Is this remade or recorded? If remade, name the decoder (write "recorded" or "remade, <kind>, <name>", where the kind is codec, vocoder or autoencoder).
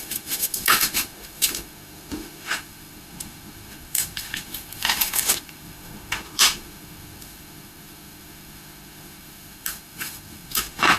remade, autoencoder, DAC-VAE